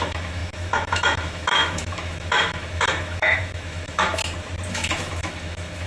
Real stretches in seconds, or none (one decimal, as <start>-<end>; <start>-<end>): 4.2-4.7